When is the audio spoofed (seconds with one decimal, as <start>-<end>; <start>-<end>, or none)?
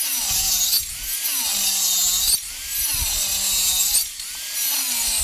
none